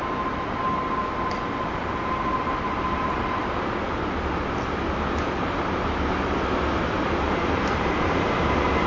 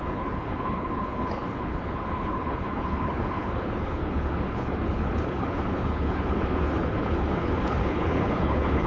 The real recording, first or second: first